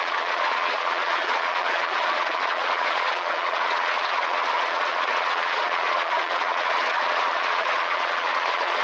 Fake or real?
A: fake